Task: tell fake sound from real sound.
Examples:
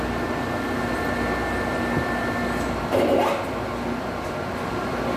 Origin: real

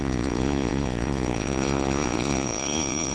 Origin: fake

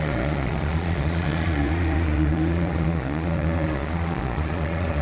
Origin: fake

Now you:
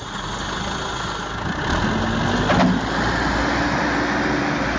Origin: real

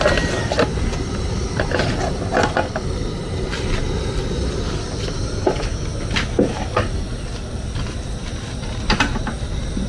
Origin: real